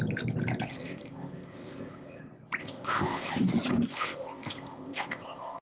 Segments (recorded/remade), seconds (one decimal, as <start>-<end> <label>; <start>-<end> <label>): 0.0-0.7 recorded; 0.7-2.2 remade; 2.2-2.6 recorded; 2.6-3.3 remade; 3.3-3.9 recorded; 3.9-5.6 remade